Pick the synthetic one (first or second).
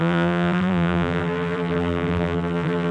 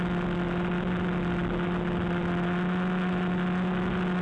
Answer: first